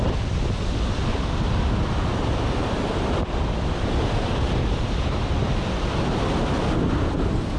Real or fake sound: real